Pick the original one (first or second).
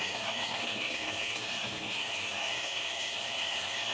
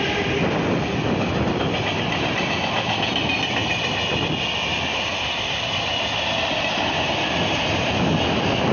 second